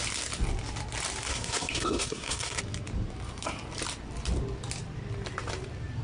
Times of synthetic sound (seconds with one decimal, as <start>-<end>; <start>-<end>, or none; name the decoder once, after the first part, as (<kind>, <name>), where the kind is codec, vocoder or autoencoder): 1.3-2.6 (codec, SNAC)